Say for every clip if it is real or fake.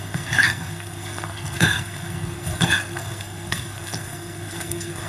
fake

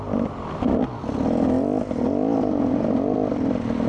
real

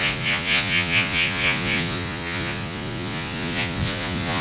fake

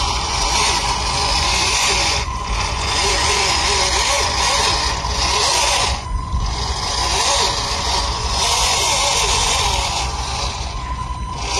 fake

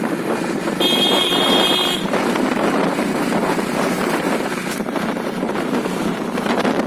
fake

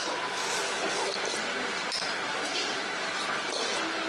real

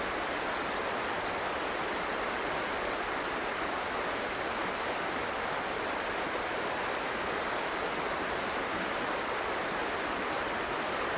real